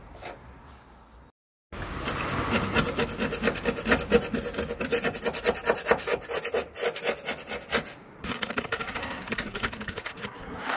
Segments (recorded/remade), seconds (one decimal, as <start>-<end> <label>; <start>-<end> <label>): 0.0-8.2 recorded; 8.2-10.8 remade

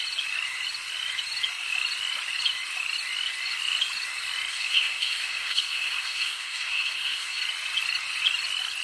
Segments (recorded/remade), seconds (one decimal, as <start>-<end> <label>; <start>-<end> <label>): 0.0-4.5 recorded; 4.5-7.4 remade; 7.4-8.8 recorded

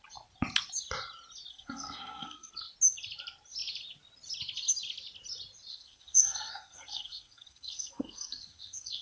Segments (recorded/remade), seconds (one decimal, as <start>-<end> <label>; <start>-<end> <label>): 0.0-1.5 recorded; 1.5-2.5 remade; 2.5-5.7 recorded; 5.7-9.0 remade

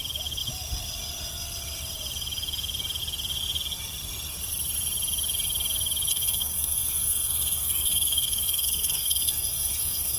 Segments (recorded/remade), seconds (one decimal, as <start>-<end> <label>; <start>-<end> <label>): 0.0-6.1 recorded; 6.1-10.2 remade

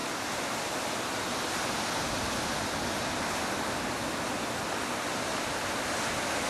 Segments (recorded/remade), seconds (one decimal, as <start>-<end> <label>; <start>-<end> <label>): 0.0-6.5 recorded

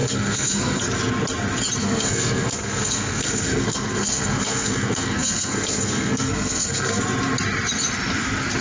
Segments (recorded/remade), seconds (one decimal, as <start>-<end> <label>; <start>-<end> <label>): 0.0-0.8 remade; 0.8-1.8 recorded; 1.8-7.0 remade; 7.0-8.6 recorded